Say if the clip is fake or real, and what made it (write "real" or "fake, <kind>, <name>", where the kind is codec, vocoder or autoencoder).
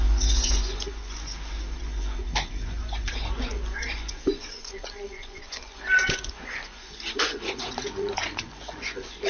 fake, vocoder, Vocos